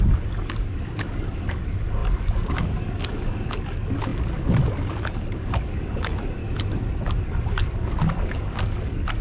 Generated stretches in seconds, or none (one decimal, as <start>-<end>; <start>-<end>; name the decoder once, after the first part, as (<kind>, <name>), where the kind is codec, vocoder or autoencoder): 0.0-6.4 (codec, DAC); 7.2-9.2